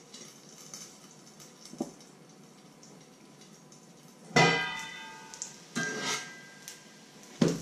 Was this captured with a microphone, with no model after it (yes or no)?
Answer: yes